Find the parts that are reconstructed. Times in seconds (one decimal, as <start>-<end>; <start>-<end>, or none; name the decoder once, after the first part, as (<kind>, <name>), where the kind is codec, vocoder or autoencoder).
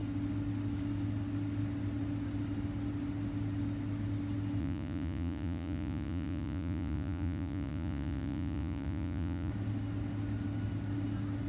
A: 4.6-9.5 (vocoder, Vocos)